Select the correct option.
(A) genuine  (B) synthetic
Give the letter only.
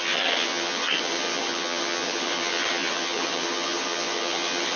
B